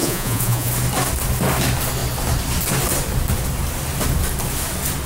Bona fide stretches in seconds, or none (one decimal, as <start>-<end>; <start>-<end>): 0.7-5.1